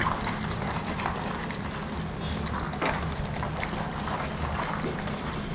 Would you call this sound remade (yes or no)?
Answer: no